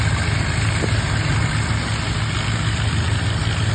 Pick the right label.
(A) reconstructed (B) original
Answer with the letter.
B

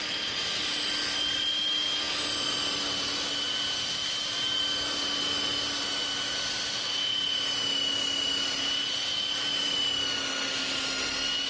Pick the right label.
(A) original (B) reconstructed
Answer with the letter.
A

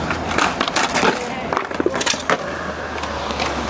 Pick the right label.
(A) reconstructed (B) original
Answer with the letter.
B